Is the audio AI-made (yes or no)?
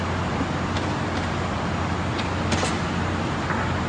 no